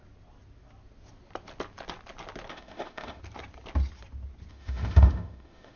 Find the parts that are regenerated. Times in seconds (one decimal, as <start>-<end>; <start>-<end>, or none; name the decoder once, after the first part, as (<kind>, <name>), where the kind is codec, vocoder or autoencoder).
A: 2.5-3.2 (autoencoder, DAC-VAE); 4.5-5.8